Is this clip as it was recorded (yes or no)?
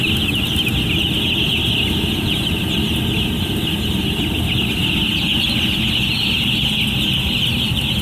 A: yes